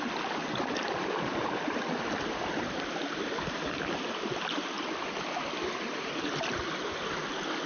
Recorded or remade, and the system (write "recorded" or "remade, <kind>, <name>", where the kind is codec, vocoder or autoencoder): recorded